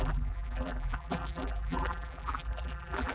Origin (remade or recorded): remade